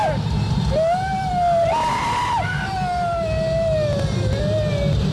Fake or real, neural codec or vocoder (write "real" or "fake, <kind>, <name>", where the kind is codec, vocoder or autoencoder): real